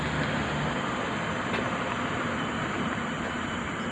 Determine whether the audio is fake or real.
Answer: real